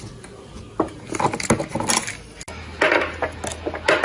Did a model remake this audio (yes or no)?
no